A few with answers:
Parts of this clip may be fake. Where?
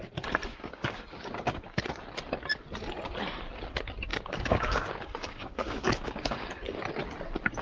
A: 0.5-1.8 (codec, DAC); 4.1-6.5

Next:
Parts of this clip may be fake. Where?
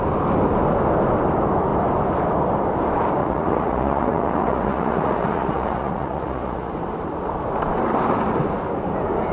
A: 3.2-6.7 (vocoder, Vocos)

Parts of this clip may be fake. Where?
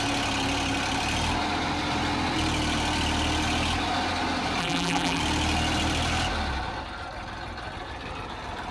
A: 4.6-5.2 (vocoder, BigVGAN v2)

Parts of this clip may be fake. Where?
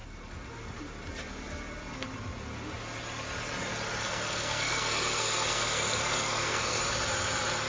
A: 4.0-6.8 (codec, SNAC)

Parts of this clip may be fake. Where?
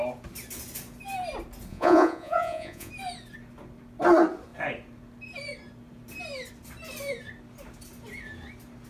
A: 1.7-2.9 (vocoder, Vocos)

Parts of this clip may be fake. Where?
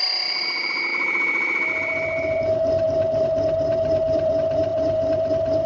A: 0.0-5.7 (vocoder, BigVGAN v2)